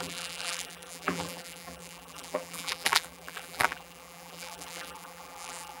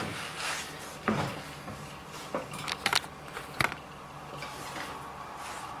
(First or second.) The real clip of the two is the second